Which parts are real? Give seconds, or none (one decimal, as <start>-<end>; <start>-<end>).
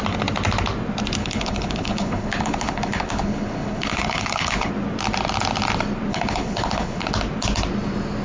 0.0-1.2; 4.7-6.1; 7.1-8.2